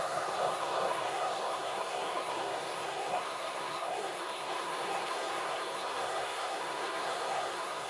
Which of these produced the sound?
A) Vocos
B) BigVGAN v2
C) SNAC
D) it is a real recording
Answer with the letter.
C